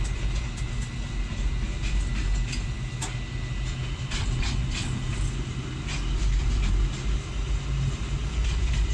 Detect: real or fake real